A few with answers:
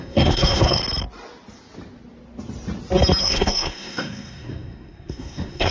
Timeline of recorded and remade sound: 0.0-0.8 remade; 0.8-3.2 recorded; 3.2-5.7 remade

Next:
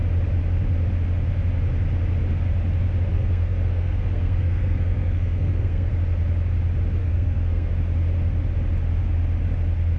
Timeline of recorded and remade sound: 0.0-3.1 recorded; 3.1-5.9 remade; 5.9-7.0 recorded; 7.0-7.7 remade; 7.7-10.0 recorded